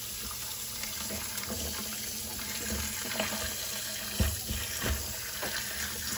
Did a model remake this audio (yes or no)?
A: no